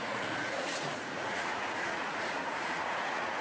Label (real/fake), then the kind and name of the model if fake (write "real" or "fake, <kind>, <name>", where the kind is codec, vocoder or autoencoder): fake, vocoder, Vocos